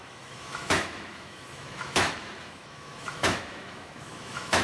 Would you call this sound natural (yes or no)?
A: no